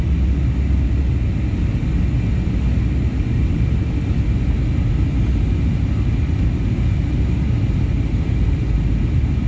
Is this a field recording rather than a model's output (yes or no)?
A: yes